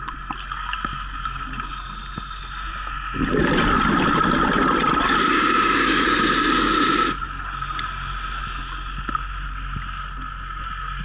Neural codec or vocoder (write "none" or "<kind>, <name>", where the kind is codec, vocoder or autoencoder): none